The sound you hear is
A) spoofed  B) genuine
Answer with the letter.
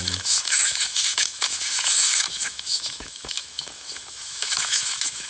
A